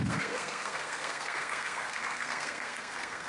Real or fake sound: fake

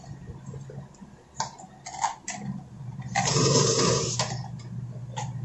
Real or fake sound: real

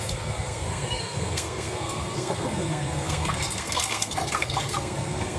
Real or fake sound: fake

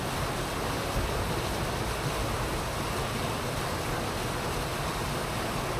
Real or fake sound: real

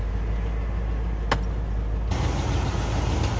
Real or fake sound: real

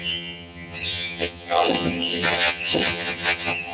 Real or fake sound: fake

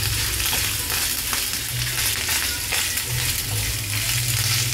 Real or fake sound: real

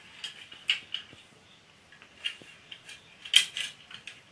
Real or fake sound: real